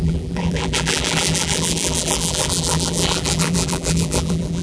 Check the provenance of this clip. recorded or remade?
remade